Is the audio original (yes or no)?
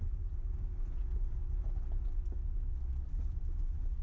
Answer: yes